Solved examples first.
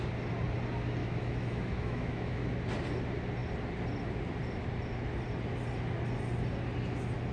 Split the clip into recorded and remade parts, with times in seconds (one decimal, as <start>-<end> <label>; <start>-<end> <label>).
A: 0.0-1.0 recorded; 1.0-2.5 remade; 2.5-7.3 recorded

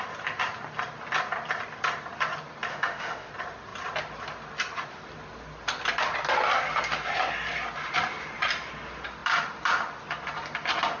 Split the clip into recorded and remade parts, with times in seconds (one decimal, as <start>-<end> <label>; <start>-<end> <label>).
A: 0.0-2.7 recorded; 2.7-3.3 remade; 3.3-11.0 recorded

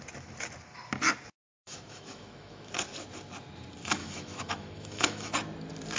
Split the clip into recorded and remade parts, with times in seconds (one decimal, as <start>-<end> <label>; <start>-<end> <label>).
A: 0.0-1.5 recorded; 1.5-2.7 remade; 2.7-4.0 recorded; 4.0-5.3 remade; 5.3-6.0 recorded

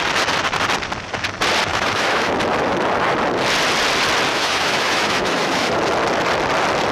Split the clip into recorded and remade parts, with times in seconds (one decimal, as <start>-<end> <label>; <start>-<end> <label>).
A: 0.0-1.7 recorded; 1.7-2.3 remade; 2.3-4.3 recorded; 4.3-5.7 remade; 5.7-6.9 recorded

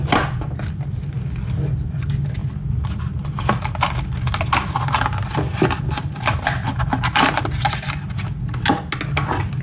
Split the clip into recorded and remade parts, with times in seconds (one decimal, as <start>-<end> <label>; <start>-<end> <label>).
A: 0.0-9.6 recorded

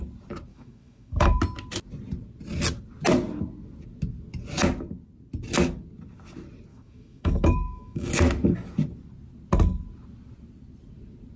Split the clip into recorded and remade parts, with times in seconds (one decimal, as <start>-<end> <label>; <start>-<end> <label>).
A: 0.0-0.5 recorded; 0.5-1.4 remade; 1.4-6.7 recorded; 6.7-8.1 remade; 8.1-11.4 recorded